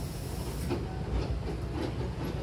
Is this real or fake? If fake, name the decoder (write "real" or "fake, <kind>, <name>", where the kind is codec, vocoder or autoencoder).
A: real